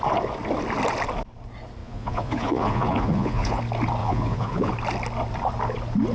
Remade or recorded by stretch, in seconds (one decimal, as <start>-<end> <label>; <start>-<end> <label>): 0.0-1.8 recorded; 1.8-3.6 remade; 3.6-4.0 recorded; 4.0-4.7 remade; 4.7-6.1 recorded